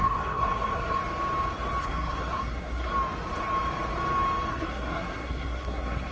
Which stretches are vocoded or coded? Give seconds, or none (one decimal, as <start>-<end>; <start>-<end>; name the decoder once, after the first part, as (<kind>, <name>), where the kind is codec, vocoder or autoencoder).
0.0-1.0 (codec, SNAC); 1.8-2.9; 4.5-6.1